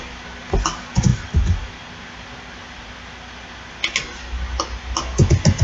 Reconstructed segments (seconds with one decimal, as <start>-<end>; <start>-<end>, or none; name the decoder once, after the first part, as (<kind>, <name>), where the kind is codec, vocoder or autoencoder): none